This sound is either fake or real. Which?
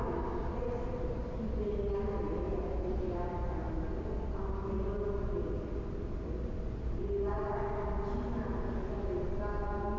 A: real